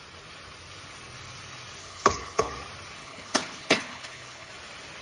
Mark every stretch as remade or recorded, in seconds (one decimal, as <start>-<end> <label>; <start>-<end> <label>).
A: 0.0-1.8 recorded; 1.8-2.5 remade; 2.5-3.0 recorded; 3.0-4.5 remade; 4.5-5.0 recorded